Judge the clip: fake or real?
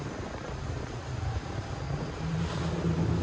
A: real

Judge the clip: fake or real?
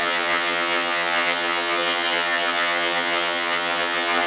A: fake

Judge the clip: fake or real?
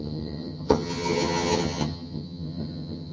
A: fake